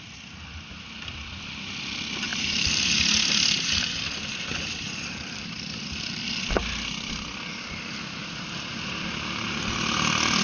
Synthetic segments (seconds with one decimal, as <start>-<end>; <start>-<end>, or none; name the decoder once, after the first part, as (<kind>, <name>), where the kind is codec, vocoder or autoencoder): 2.3-3.3 (vocoder, BigVGAN v2)